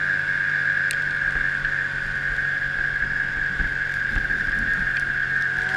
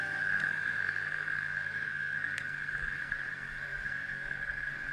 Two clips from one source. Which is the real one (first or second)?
first